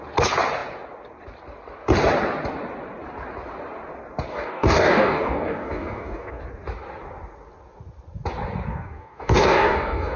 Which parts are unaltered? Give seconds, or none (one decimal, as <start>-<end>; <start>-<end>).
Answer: 0.0-4.3; 6.4-8.7